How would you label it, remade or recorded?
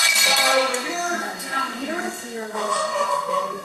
remade